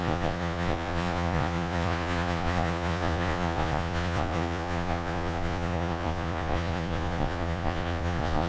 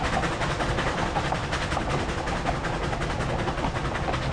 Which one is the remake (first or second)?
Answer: first